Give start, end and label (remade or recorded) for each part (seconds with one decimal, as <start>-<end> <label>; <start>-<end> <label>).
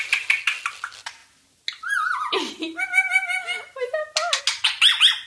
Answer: 0.0-5.3 recorded